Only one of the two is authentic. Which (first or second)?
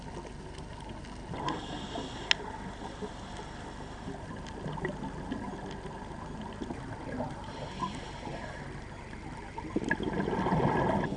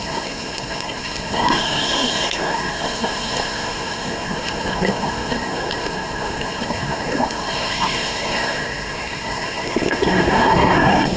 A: first